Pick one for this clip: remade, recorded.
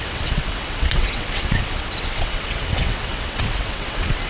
remade